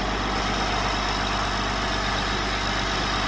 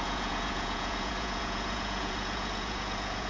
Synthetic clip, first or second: second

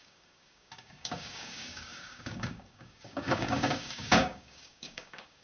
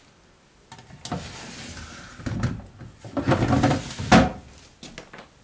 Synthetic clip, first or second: first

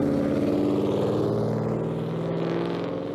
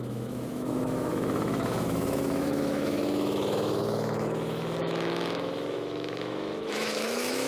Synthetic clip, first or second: second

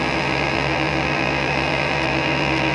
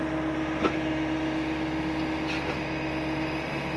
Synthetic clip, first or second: first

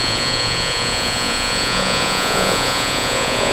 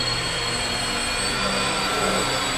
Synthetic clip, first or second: first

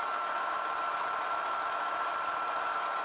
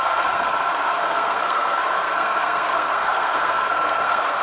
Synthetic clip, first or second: second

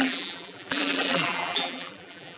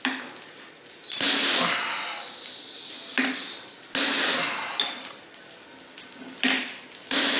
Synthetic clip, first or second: first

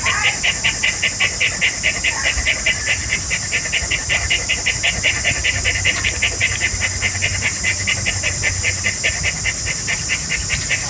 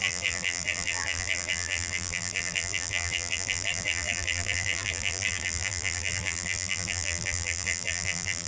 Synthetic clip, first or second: second